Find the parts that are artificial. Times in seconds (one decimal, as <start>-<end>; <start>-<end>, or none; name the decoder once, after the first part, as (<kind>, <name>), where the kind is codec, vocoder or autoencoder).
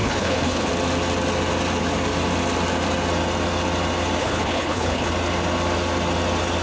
0.0-0.7 (codec, HILCodec); 4.2-5.1